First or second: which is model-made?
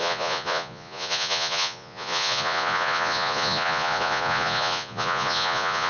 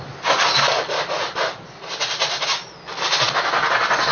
first